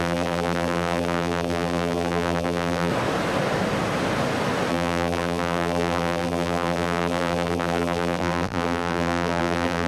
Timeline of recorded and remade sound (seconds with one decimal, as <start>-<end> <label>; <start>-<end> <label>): 0.0-2.9 remade; 2.9-4.7 recorded; 4.7-9.9 remade